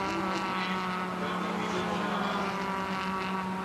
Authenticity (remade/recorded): recorded